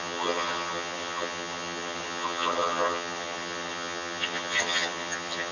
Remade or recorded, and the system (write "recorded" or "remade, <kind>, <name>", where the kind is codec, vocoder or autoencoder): remade, vocoder, HiFi-GAN